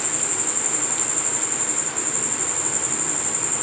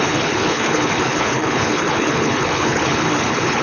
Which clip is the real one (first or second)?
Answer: first